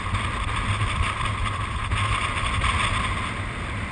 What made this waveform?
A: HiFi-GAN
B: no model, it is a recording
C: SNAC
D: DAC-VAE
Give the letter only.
B